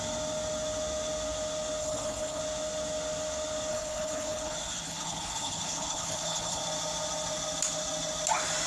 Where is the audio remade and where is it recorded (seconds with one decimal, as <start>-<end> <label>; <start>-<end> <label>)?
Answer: 0.0-1.8 recorded; 1.8-2.4 remade; 2.4-3.7 recorded; 3.7-6.6 remade; 6.6-8.7 recorded